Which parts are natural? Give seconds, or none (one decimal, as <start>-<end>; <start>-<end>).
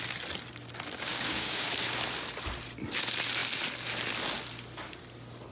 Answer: 0.0-1.1; 1.7-5.5